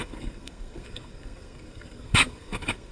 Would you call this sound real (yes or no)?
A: no